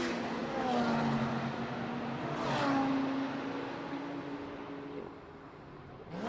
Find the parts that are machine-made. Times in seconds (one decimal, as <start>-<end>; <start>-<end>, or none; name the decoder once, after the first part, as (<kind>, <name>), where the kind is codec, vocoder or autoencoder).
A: none